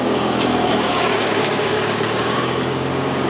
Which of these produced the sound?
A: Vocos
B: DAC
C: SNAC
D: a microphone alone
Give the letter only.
B